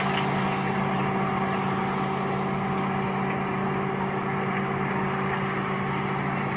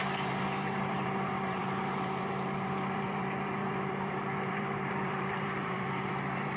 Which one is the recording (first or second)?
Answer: first